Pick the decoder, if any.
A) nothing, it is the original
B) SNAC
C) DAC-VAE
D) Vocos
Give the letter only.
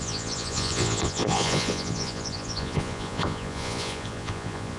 D